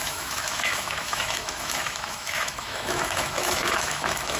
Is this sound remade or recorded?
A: remade